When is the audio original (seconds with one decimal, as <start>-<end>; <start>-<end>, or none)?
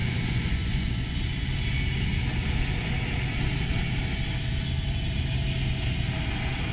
1.2-6.7